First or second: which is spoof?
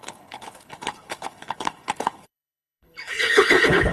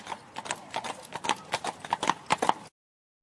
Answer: first